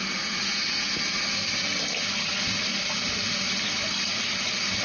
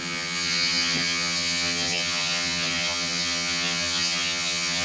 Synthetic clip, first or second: second